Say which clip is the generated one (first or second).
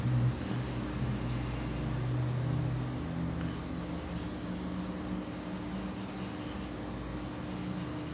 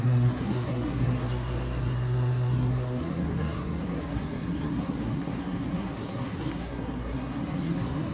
second